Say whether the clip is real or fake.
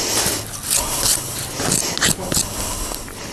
real